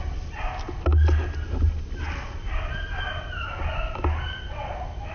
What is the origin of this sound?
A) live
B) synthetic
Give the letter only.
A